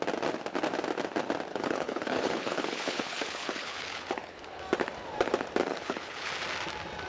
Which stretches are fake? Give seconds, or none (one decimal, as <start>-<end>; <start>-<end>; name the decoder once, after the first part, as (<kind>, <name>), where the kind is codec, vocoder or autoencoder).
1.5-4.6 (codec, HILCodec); 5.7-6.3